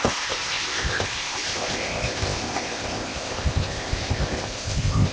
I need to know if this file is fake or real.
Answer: fake